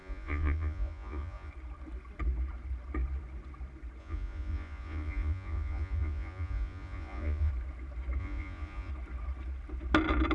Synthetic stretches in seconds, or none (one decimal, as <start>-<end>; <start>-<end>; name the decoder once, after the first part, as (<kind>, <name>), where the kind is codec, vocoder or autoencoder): 0.0-1.5 (vocoder, Vocos); 4.0-7.5; 8.2-8.9